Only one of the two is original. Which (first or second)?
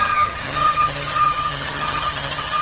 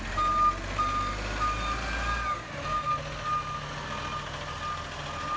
second